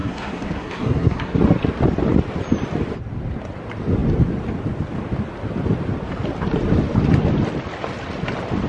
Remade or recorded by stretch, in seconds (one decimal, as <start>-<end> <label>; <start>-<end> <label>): 0.0-1.4 remade; 1.4-8.7 recorded